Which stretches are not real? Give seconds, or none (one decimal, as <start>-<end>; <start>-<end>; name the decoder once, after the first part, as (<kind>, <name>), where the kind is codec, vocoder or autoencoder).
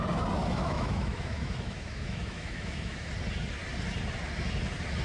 0.4-3.1 (autoencoder, DAC-VAE)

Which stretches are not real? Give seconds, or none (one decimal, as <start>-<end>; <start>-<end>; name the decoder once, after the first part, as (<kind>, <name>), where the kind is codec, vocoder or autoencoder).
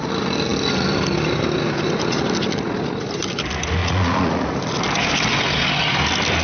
3.8-4.6 (vocoder, Vocos)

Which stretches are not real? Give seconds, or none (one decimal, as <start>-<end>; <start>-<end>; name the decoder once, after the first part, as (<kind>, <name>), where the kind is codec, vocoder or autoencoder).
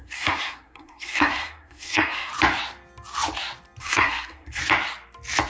0.0-2.3 (codec, SNAC); 3.8-4.6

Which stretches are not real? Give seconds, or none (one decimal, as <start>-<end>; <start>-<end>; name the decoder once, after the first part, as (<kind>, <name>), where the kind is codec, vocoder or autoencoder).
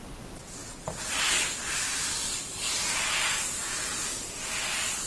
none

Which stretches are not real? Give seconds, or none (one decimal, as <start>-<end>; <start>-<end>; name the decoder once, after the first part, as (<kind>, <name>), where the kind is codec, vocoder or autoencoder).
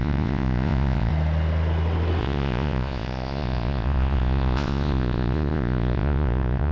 0.0-1.1 (vocoder, Vocos); 2.2-6.7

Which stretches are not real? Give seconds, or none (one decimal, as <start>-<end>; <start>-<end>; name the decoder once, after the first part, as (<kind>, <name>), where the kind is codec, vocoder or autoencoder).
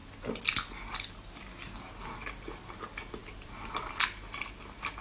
none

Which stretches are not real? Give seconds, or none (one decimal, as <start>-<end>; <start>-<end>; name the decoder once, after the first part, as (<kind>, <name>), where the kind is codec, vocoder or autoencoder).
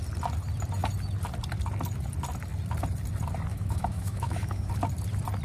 3.5-4.7 (autoencoder, DAC-VAE)